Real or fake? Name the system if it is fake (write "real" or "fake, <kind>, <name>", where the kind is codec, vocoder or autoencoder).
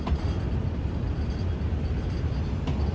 real